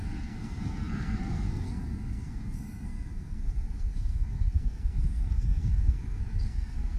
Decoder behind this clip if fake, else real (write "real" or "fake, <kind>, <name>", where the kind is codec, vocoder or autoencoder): fake, codec, SNAC